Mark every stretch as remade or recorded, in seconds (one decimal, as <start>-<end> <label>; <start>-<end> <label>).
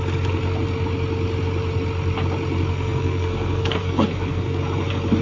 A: 0.0-2.7 recorded; 2.7-4.6 remade; 4.6-5.2 recorded